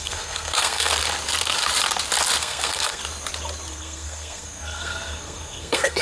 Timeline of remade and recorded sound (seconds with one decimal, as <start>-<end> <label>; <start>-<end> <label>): 0.0-0.9 remade; 0.9-2.4 recorded; 2.4-3.0 remade; 3.0-3.7 recorded; 3.7-6.0 remade